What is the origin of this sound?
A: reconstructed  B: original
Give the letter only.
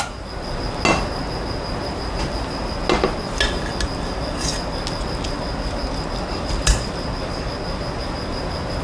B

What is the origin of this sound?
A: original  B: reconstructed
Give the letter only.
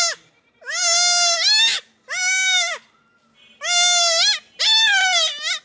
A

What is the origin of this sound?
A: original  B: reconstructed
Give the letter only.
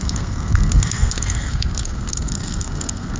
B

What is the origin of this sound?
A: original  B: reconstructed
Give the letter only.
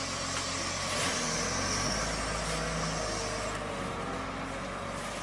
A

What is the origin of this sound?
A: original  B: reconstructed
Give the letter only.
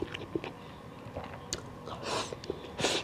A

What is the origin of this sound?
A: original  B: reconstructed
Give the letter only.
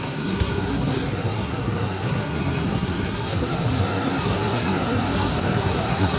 B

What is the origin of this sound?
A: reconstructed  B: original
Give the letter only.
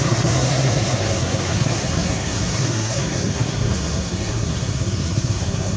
A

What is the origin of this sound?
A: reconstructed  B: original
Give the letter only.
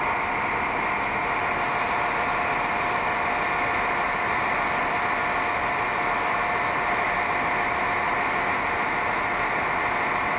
B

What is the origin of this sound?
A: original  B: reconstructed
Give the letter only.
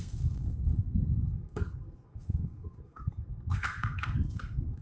B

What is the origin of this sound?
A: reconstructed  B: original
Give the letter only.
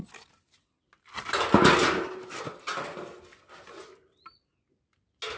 B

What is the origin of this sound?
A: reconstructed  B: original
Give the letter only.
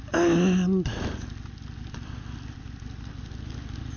B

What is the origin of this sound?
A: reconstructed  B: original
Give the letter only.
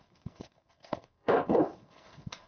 A